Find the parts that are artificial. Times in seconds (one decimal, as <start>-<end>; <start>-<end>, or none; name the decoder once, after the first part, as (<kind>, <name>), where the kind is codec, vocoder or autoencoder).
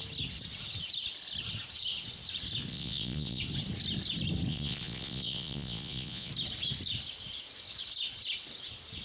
2.7-3.4 (vocoder, Vocos); 4.5-6.3